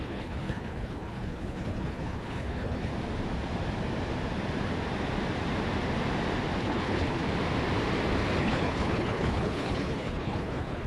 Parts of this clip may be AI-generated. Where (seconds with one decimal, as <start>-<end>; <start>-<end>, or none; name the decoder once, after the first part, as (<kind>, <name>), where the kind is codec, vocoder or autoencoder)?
0.0-2.9 (codec, HILCodec); 6.6-7.2; 8.4-10.9